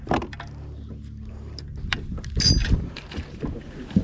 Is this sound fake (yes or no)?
no